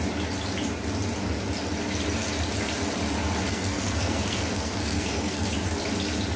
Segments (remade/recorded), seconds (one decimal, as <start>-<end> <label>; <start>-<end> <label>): 0.0-3.5 recorded; 3.5-5.5 remade; 5.5-6.4 recorded